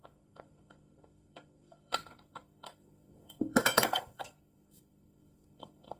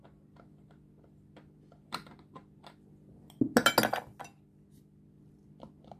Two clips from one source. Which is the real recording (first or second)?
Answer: second